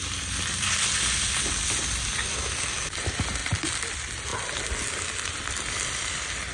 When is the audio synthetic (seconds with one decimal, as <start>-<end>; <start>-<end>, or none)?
none